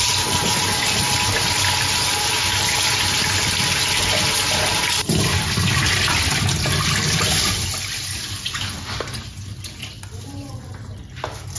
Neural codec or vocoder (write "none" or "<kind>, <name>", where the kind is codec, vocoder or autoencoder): none